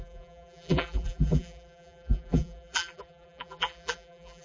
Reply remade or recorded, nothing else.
remade